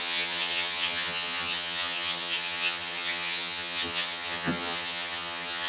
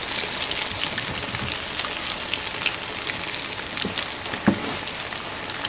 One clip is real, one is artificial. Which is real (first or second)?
second